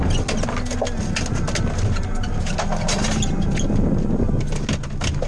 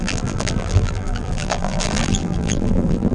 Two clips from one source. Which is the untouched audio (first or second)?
first